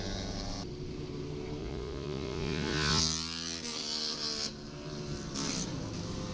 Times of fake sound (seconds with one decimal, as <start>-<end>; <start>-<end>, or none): 1.6-3.0